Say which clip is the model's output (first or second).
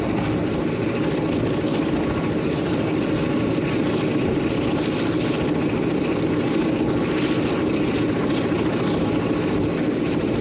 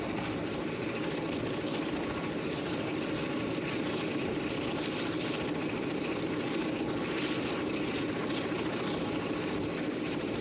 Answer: second